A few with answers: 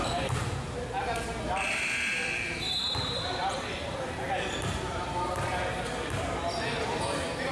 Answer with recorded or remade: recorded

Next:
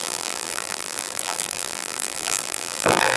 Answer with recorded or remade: remade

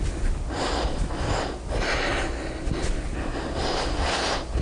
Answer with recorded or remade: recorded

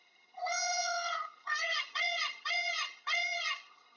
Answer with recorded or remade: remade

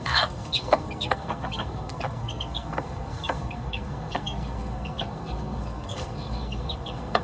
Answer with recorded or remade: remade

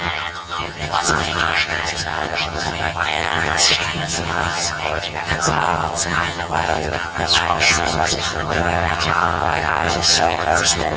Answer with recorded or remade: remade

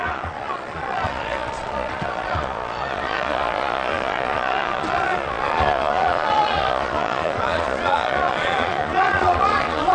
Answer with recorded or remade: remade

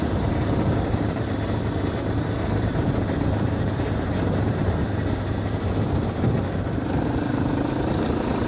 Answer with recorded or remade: remade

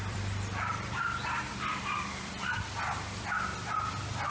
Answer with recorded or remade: remade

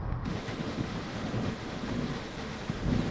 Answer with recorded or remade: remade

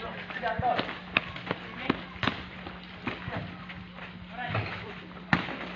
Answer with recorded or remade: recorded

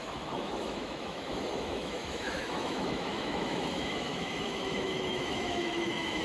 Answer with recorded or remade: remade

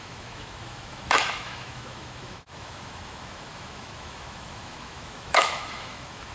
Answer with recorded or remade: remade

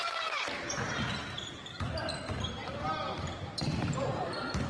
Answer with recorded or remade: remade